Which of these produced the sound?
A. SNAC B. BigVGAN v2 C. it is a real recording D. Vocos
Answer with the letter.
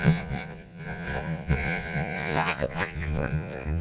D